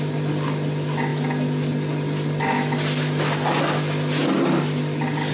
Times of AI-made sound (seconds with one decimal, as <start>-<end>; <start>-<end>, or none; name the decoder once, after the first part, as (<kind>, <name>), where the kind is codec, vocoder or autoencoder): none